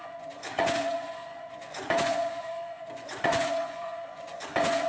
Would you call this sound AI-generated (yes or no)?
yes